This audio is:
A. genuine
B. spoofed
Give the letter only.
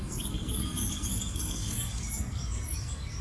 B